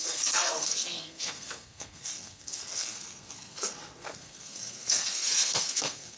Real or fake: fake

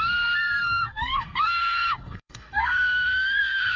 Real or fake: fake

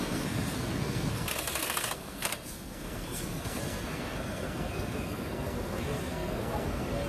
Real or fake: fake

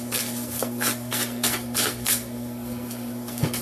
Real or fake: fake